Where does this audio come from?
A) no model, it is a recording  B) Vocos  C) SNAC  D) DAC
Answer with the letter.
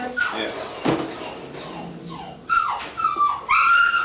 A